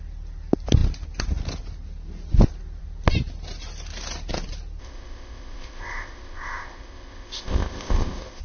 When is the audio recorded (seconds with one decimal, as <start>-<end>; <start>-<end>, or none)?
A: 0.0-4.8